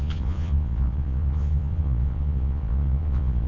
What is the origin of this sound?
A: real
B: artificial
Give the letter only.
B